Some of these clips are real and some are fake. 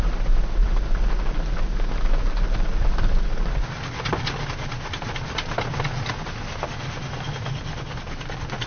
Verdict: real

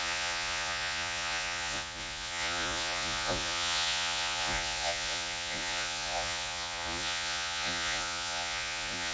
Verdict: fake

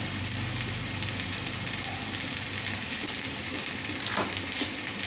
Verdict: fake